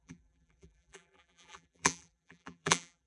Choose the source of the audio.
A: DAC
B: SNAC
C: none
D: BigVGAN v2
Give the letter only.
D